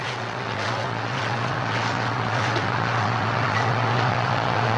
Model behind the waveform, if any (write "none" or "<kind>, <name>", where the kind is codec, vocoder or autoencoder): vocoder, WaveNeXt